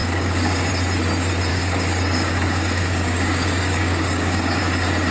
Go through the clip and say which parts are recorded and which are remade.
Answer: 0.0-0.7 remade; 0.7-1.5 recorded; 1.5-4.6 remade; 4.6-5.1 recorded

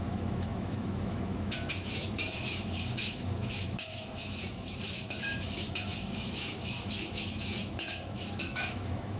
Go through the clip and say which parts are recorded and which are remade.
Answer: 0.0-9.2 remade